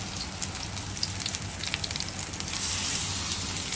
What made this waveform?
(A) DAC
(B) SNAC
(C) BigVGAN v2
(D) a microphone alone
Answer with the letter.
D